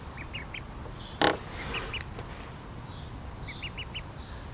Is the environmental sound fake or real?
real